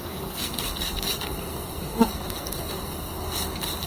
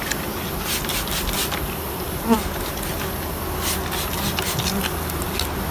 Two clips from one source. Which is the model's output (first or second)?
first